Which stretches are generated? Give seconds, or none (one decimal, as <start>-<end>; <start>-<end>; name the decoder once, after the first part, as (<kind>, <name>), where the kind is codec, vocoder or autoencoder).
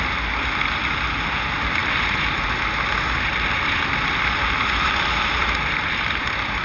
none